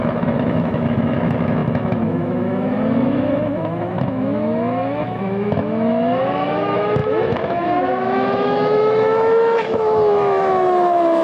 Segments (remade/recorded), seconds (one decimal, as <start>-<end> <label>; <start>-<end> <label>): 0.0-11.2 remade